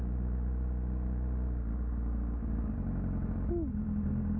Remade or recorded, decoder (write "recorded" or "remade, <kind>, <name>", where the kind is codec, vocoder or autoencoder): recorded